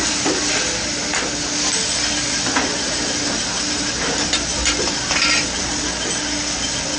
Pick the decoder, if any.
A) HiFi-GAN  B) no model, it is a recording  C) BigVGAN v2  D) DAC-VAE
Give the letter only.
B